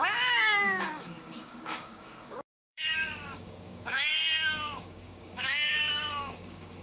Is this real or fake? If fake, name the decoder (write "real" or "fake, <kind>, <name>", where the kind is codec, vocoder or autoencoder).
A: fake, codec, DAC